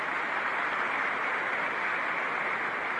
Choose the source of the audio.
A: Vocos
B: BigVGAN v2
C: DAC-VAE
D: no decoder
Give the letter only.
D